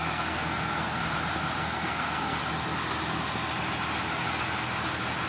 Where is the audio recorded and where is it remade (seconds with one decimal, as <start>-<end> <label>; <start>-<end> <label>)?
0.0-1.0 remade; 1.0-1.6 recorded; 1.6-2.4 remade; 2.4-5.3 recorded